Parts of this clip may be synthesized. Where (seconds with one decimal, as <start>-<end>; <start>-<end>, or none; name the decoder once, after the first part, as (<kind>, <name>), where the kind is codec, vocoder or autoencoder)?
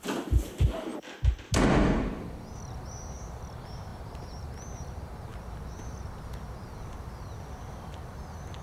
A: 3.9-4.5 (vocoder, BigVGAN v2)